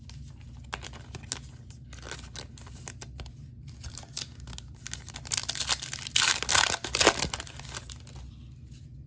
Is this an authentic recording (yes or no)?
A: yes